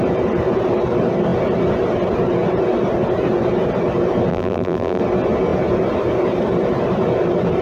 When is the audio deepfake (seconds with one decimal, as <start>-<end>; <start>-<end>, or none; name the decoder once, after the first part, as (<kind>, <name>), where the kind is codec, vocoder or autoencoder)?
4.3-5.0 (vocoder, BigVGAN v2)